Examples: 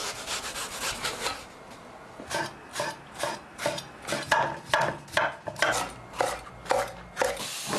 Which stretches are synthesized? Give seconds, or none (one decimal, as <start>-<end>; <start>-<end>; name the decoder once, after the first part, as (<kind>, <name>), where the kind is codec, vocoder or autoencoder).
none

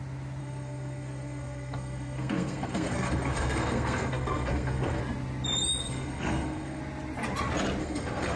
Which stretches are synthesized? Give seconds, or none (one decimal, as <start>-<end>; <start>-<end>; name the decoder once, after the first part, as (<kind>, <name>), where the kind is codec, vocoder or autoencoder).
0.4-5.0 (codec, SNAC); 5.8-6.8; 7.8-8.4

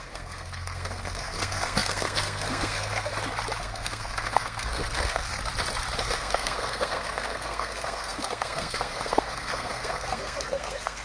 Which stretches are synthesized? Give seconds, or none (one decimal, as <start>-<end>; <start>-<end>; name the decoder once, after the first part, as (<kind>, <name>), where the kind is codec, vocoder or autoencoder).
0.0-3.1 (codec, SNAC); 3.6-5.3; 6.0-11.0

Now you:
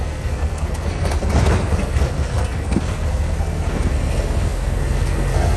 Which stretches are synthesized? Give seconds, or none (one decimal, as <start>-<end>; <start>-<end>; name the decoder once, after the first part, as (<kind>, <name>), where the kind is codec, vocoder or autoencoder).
0.0-5.6 (codec, SNAC)

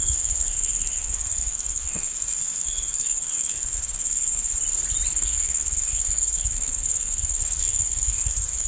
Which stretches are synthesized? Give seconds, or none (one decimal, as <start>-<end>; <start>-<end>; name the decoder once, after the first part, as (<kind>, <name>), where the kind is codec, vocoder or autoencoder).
0.0-4.5 (codec, SNAC); 5.1-8.7

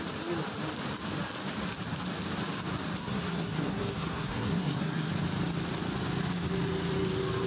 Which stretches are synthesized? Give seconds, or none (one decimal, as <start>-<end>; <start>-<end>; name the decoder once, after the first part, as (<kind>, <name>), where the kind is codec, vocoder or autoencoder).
3.0-5.1 (codec, SNAC)